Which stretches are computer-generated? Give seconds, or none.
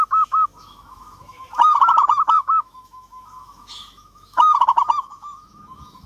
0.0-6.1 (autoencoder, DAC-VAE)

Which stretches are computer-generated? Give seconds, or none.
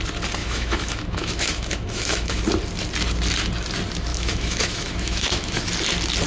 0.4-2.4 (autoencoder, DAC-VAE); 4.1-5.6